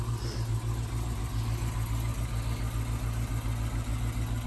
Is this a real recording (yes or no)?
yes